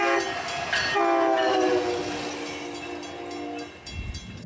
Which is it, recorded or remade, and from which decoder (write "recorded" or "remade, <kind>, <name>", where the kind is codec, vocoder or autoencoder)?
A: recorded